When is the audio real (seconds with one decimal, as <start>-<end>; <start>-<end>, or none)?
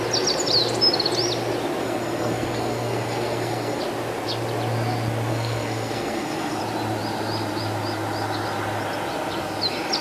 0.0-1.8; 3.8-5.3; 6.6-10.0